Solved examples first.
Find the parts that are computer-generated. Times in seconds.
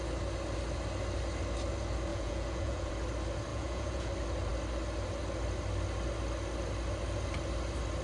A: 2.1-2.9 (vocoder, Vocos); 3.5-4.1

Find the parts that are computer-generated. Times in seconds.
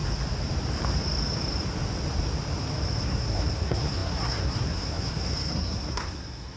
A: 3.0-6.6 (codec, SNAC)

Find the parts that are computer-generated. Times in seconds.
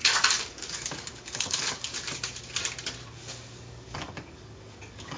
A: 0.0-1.9 (codec, DAC); 3.1-5.2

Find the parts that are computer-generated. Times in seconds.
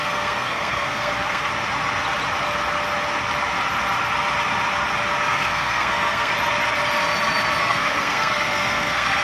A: 0.0-1.5 (codec, SNAC); 5.3-6.3; 7.6-9.2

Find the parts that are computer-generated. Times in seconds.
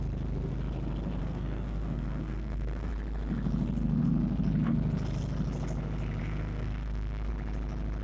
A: 1.2-2.9 (codec, SNAC); 6.2-7.3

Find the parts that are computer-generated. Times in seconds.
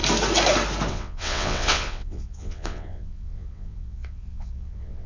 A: 0.9-5.1 (vocoder, WaveNeXt)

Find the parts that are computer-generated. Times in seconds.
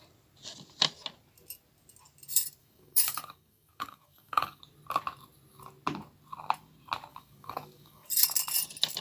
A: 2.6-4.6 (codec, DAC); 7.1-8.1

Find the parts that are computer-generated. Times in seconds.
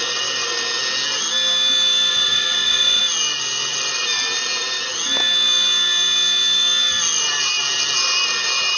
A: 2.1-3.0 (vocoder, Vocos)